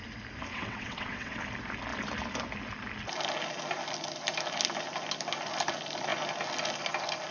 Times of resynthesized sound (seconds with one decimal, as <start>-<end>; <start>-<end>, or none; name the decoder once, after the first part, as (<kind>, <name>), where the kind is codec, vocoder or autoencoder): 0.5-1.4 (vocoder, WaveNeXt)